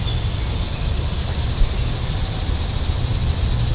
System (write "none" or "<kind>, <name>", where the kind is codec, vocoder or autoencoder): none